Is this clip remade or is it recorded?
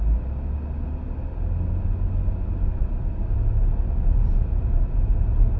recorded